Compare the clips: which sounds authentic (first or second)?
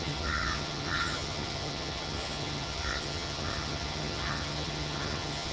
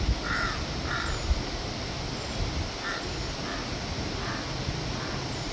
second